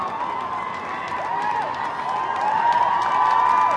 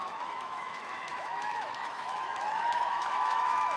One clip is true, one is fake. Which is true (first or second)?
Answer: first